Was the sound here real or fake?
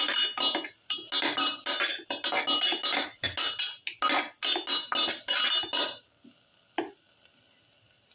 real